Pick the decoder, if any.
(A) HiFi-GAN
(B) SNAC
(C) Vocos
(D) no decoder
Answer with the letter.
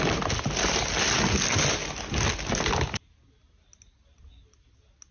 D